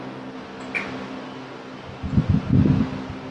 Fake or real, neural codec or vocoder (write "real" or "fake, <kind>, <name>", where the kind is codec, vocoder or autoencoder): real